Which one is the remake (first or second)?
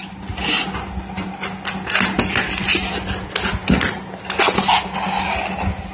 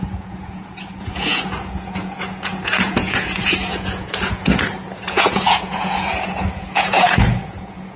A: second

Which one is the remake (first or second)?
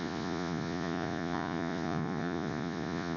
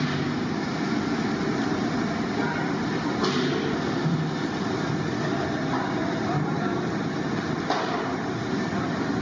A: first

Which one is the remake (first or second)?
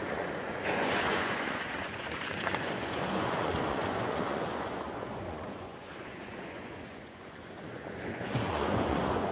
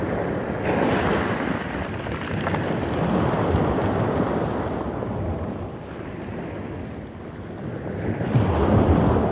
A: first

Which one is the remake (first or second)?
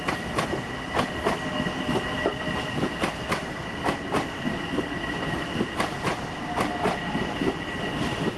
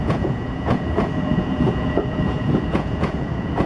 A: second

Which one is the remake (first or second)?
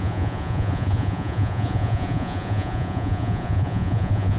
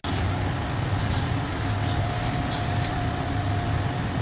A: first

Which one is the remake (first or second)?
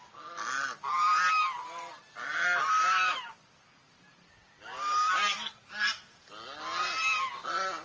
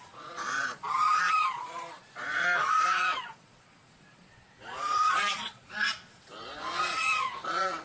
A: second